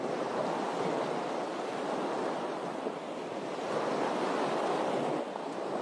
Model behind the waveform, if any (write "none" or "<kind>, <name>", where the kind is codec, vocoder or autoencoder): none